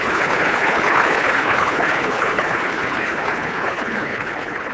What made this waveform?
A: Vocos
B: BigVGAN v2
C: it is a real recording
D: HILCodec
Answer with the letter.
D